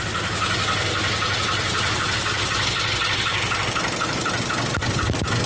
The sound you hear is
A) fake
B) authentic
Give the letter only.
B